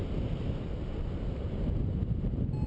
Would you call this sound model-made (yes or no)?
no